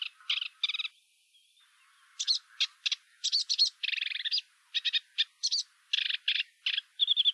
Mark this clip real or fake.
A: real